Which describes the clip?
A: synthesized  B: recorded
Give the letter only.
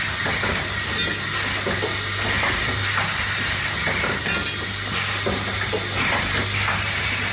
B